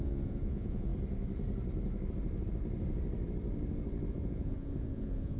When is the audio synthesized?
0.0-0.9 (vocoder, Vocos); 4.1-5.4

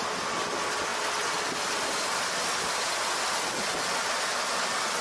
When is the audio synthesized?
none

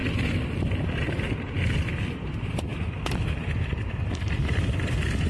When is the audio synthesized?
none

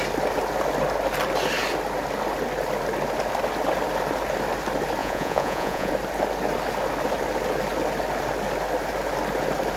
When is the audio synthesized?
5.0-5.9 (vocoder, Vocos)